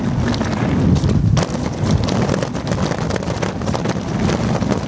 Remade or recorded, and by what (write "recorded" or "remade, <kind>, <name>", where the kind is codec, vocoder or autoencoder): recorded